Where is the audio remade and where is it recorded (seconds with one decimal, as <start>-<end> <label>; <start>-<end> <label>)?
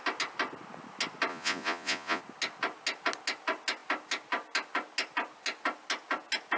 0.0-1.3 recorded; 1.3-2.2 remade; 2.2-6.6 recorded